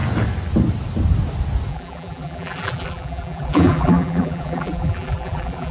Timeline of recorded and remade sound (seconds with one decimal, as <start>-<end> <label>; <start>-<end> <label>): 0.0-1.7 recorded; 1.7-5.7 remade